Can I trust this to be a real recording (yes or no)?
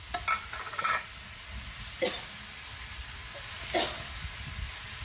yes